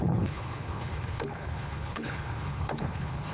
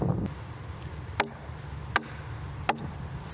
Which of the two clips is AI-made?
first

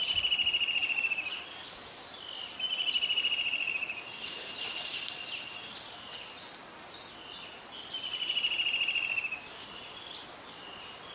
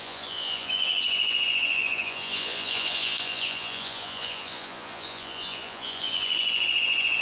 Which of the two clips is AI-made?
second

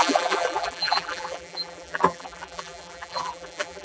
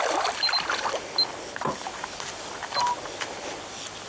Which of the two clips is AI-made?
first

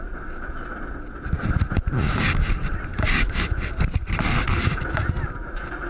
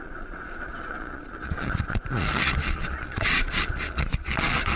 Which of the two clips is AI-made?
second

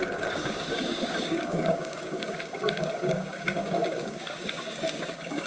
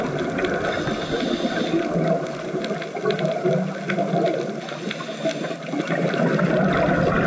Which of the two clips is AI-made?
first